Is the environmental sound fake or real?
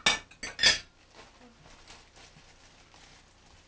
real